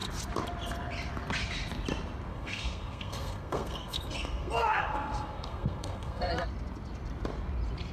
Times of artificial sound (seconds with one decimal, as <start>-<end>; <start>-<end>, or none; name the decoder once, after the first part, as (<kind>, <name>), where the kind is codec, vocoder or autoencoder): 2.3-6.3 (codec, SNAC)